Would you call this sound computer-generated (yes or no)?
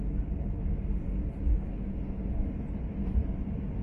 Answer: no